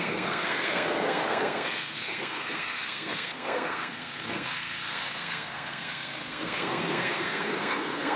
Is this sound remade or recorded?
remade